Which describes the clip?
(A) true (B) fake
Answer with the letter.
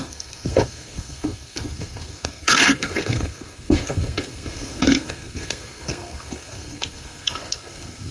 B